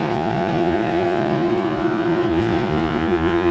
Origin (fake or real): fake